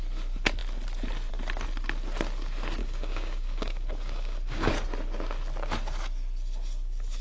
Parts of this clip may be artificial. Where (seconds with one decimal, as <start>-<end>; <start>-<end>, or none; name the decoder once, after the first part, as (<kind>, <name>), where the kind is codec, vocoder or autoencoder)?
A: 2.8-4.7 (codec, DAC)